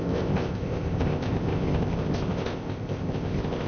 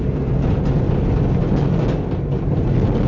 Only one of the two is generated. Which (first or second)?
first